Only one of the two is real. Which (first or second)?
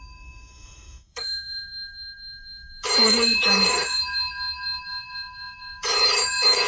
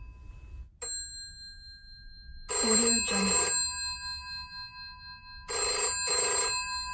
second